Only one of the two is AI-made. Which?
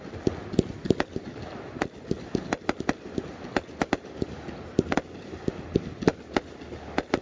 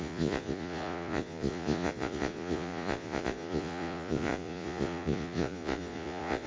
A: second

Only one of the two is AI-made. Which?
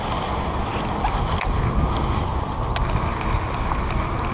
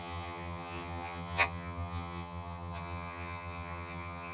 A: second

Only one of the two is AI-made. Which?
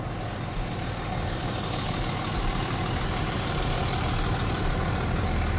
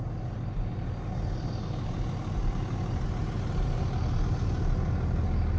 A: first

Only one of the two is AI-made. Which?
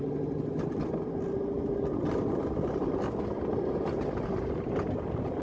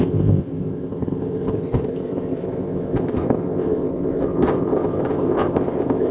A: second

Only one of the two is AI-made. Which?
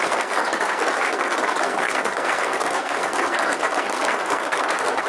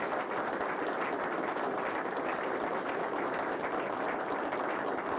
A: first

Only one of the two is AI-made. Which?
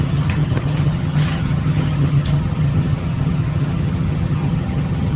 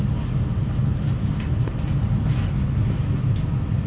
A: first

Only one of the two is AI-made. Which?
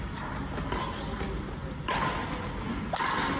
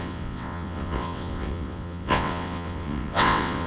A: second